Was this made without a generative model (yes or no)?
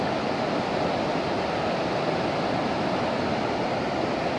yes